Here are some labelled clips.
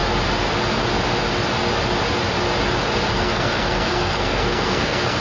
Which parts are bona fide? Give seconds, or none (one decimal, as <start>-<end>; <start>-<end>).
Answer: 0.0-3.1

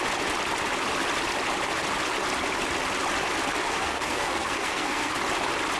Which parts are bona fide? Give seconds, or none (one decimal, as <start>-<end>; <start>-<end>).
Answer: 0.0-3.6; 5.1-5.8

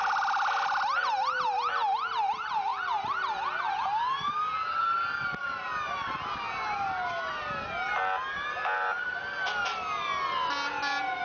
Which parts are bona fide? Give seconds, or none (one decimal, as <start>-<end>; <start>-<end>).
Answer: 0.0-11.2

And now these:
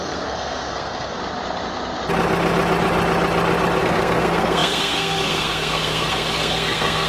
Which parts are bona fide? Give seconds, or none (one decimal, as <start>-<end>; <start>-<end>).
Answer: 1.2-3.8

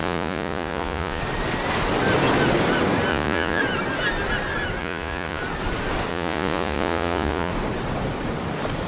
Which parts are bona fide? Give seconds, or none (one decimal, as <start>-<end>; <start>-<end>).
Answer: 1.2-3.1; 3.6-4.8; 5.4-6.1; 7.5-8.9